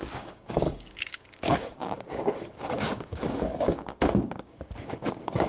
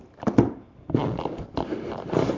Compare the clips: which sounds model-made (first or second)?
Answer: first